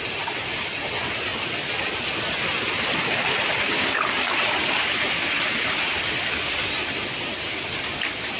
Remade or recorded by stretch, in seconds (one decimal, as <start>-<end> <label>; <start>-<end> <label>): 0.0-8.4 recorded